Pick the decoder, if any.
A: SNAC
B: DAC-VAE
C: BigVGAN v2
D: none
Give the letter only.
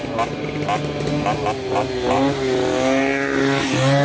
D